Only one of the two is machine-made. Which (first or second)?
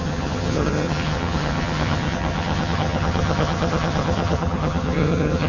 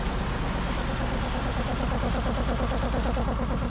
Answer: first